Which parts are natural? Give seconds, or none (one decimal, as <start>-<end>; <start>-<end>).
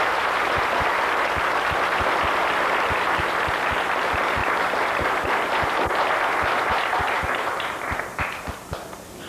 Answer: 0.0-9.3